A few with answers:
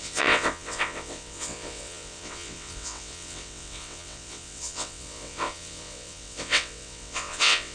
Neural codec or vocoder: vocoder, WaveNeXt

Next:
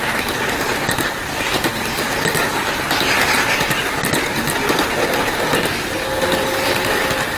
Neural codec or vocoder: none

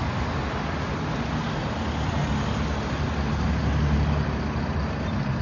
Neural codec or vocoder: none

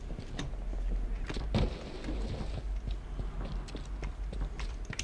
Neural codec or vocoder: none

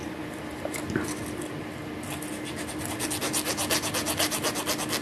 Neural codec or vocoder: none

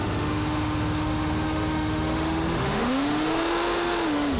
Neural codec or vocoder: autoencoder, DAC-VAE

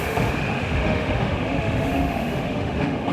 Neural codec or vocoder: autoencoder, DAC-VAE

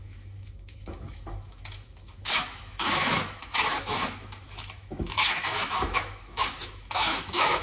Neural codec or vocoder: autoencoder, DAC-VAE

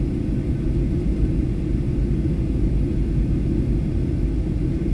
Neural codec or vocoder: none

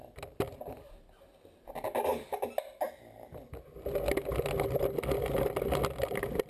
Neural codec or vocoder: none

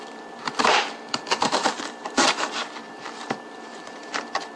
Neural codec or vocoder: vocoder, BigVGAN v2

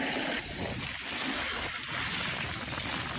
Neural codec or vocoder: none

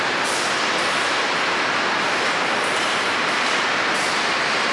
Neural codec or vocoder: none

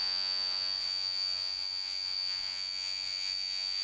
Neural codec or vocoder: vocoder, Vocos